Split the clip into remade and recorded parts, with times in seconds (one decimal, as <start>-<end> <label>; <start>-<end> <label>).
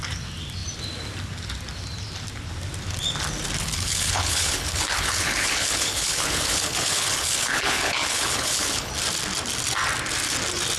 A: 0.0-3.6 recorded; 3.6-8.9 remade; 8.9-10.8 recorded